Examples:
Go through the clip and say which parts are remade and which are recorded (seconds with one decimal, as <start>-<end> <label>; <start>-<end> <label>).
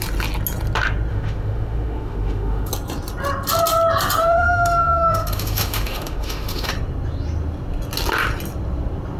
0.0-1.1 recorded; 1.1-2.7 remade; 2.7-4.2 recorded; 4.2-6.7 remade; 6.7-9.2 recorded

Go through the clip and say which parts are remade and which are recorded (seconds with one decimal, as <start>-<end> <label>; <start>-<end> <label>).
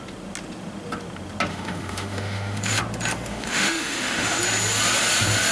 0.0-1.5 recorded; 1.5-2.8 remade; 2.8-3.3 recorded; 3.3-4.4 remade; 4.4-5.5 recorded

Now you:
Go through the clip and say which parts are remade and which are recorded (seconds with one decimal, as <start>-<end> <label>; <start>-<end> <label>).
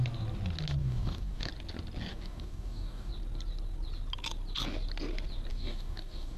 0.0-0.8 recorded; 0.8-1.5 remade; 1.5-2.1 recorded; 2.1-3.1 remade; 3.1-5.5 recorded; 5.5-6.4 remade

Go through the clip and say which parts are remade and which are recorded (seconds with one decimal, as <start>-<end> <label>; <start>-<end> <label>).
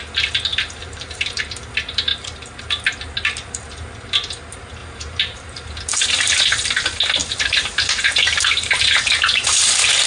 0.0-0.5 recorded; 0.5-1.4 remade; 1.4-2.1 recorded; 2.1-2.6 remade; 2.6-4.8 recorded; 4.8-5.8 remade; 5.8-7.2 recorded; 7.2-10.1 remade